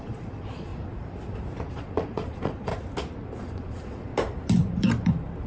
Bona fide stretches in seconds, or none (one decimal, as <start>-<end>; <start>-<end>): 0.7-1.7; 2.7-3.4; 4.1-5.5

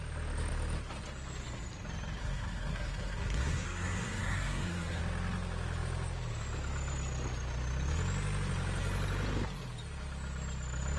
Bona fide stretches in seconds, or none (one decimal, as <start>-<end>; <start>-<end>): 0.0-2.2; 5.0-11.0

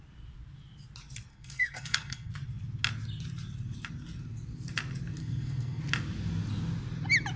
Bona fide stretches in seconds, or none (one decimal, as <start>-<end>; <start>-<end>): 0.0-1.3; 2.3-5.2; 5.8-7.4

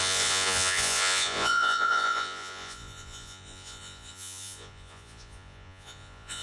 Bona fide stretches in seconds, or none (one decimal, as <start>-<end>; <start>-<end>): none

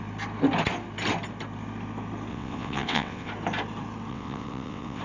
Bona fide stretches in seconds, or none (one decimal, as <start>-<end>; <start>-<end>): 0.0-2.3; 3.3-4.1